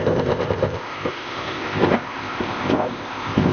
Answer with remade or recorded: remade